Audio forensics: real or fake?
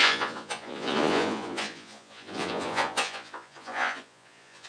fake